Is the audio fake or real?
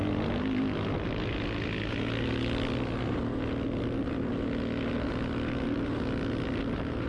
real